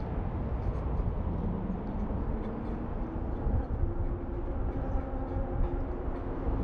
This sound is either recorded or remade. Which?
recorded